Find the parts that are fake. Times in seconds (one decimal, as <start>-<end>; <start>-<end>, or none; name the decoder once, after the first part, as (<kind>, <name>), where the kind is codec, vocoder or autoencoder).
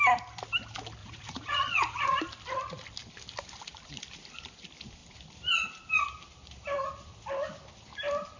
1.0-2.2 (vocoder, Vocos)